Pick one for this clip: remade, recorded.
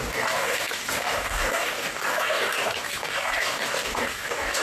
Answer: remade